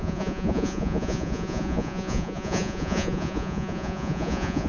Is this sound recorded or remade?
remade